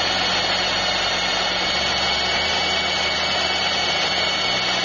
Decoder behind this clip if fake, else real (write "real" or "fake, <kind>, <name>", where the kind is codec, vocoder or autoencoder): real